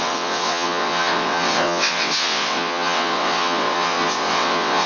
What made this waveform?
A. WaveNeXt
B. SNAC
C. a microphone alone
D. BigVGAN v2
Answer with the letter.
A